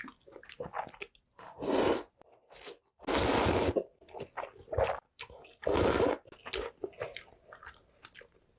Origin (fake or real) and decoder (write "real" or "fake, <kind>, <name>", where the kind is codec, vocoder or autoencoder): real